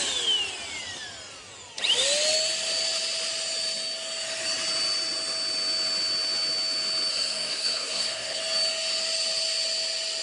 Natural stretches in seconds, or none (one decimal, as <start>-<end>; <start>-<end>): 0.0-7.1; 8.4-10.2